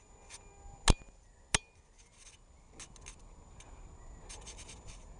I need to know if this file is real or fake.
real